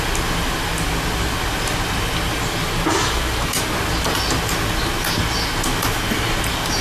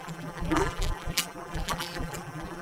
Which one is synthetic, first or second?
second